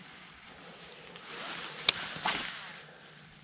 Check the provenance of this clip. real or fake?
real